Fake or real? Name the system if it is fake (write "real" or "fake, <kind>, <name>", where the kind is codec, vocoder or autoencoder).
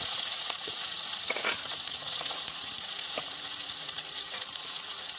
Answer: fake, vocoder, Vocos